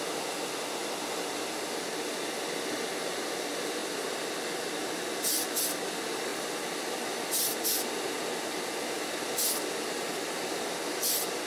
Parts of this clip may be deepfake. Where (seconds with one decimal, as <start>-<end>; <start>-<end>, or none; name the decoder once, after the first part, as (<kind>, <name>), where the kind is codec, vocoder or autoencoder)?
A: none

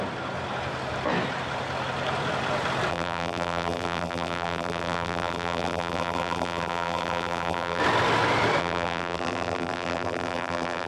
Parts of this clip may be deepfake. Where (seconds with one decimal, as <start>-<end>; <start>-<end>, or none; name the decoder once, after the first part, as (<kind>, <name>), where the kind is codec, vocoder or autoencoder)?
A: 2.9-7.8 (vocoder, BigVGAN v2); 8.6-10.9

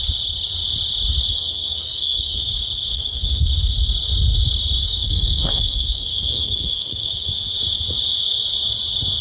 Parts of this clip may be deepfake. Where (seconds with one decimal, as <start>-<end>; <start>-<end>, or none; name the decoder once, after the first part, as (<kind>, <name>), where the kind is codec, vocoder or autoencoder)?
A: 1.3-2.5 (codec, SNAC); 2.9-3.4; 4.8-7.3

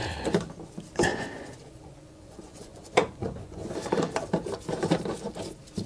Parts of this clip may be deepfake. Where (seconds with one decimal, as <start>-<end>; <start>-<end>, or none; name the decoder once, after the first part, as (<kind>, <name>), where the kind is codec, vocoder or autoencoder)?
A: 1.1-4.1 (vocoder, Vocos)

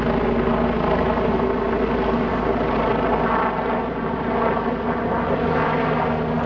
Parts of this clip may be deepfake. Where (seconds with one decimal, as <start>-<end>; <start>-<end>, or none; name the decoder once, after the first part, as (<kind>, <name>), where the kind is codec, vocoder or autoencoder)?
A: none

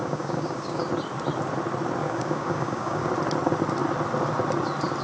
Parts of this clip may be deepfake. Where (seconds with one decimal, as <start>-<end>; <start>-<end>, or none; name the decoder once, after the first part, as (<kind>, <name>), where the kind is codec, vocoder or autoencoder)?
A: 0.0-0.8 (codec, DAC); 2.0-3.1

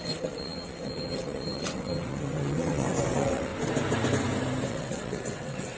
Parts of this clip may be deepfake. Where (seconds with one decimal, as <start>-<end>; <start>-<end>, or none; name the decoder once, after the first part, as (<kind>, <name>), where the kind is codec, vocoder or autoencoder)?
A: 0.0-3.5 (vocoder, WaveNeXt); 4.7-5.8

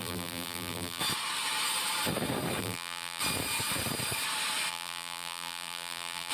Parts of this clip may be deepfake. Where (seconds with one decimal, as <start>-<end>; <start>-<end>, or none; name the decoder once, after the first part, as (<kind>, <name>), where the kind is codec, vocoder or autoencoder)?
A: 0.0-1.0 (vocoder, BigVGAN v2); 2.6-3.2; 4.7-6.3